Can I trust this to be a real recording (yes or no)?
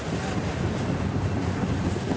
no